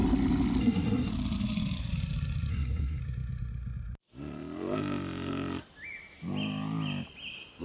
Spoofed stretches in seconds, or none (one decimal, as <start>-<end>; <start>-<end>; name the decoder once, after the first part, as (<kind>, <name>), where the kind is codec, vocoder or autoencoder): 0.6-1.1 (codec, SNAC); 2.5-3.0